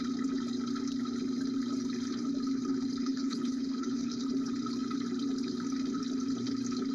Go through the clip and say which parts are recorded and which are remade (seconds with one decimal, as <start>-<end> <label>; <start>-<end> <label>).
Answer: 0.0-3.0 recorded; 3.0-4.3 remade; 4.3-6.9 recorded